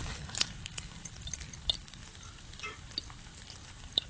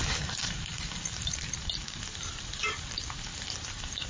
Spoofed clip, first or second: second